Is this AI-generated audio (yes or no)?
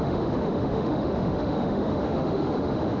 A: yes